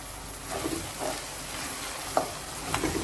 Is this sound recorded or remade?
recorded